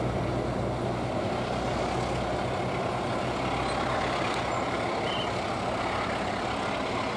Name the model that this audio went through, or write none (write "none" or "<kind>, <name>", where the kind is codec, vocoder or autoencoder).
none